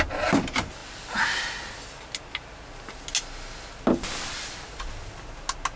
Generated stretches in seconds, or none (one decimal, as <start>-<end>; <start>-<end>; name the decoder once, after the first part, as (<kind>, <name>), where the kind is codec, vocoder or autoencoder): 0.8-1.7 (vocoder, BigVGAN v2)